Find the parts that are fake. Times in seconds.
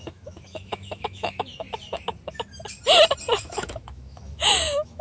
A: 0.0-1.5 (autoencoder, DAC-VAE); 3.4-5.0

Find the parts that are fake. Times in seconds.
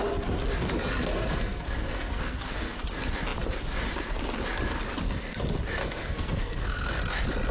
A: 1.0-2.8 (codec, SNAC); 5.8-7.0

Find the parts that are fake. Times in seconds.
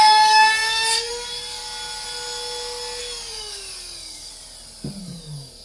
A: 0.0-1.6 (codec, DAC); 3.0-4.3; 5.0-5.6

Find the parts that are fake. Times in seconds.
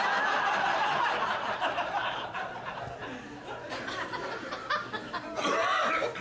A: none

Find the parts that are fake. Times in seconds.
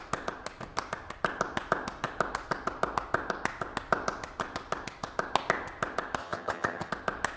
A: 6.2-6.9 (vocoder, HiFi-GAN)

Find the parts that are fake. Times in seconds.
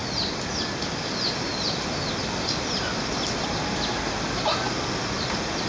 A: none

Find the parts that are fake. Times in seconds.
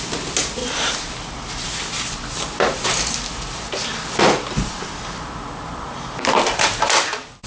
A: 0.6-1.1 (vocoder, BigVGAN v2)